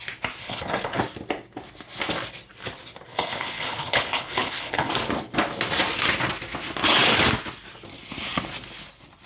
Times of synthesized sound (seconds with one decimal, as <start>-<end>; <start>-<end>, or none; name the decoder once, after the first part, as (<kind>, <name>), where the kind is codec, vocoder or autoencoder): 0.4-1.0 (codec, HILCodec); 3.1-4.9